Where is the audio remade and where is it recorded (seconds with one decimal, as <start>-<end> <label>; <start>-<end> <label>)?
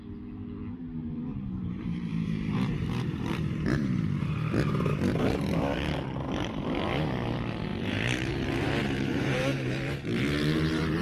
0.0-1.6 recorded; 1.6-4.2 remade; 4.2-7.7 recorded; 7.7-9.7 remade; 9.7-11.0 recorded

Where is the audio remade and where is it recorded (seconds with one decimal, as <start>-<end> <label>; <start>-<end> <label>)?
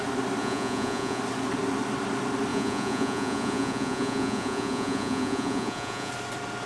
0.0-0.4 recorded; 0.4-1.2 remade; 1.2-2.5 recorded; 2.5-6.1 remade; 6.1-6.7 recorded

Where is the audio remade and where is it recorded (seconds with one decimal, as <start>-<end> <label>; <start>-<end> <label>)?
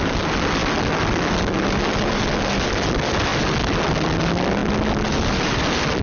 0.0-6.0 recorded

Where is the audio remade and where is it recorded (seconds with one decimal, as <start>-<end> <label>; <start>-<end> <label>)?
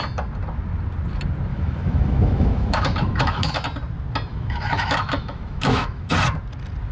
0.0-1.5 recorded; 1.5-3.5 remade; 3.5-4.3 recorded; 4.3-6.1 remade; 6.1-6.9 recorded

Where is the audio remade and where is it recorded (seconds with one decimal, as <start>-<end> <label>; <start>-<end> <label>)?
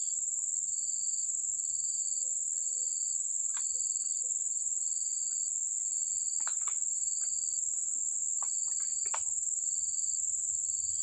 0.0-11.0 recorded